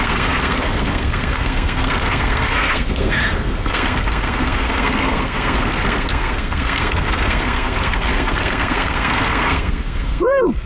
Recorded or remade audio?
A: remade